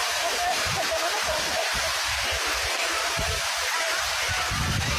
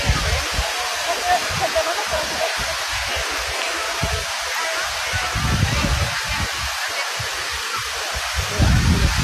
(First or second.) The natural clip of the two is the second